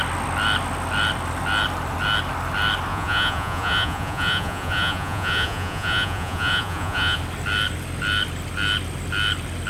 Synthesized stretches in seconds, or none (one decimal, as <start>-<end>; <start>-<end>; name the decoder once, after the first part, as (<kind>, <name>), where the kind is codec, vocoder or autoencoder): 2.9-7.2 (vocoder, Vocos)